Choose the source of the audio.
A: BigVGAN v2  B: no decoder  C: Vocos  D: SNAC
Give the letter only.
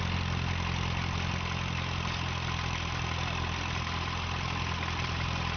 B